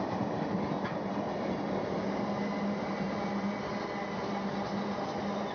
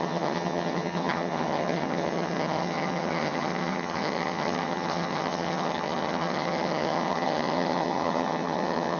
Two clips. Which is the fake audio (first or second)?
second